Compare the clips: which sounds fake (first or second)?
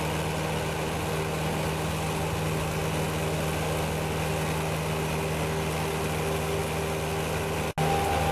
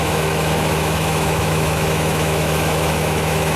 second